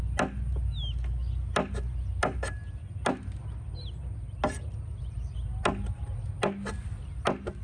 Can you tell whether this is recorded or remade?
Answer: recorded